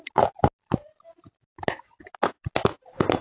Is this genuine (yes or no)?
yes